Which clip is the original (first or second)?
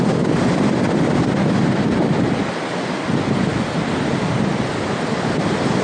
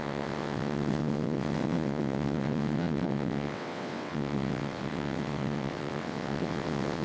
first